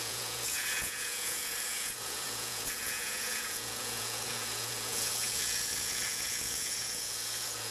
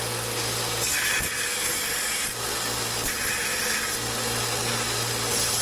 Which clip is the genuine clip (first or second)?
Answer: second